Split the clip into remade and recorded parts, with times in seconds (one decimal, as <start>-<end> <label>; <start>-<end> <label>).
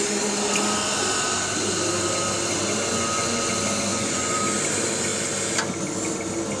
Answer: 0.0-2.9 recorded; 2.9-3.5 remade; 3.5-3.9 recorded; 3.9-4.4 remade; 4.4-6.6 recorded